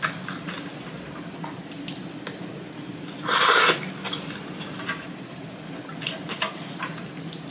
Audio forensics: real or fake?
real